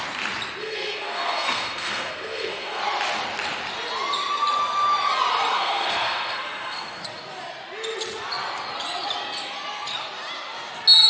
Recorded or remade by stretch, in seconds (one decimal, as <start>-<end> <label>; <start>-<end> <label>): 0.0-0.6 recorded; 0.6-2.8 remade; 2.8-5.5 recorded; 5.5-7.0 remade; 7.0-11.1 recorded